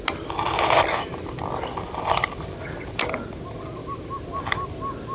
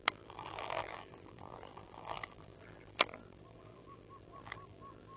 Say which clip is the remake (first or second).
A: second